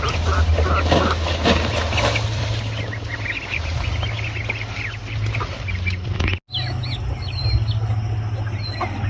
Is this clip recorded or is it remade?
recorded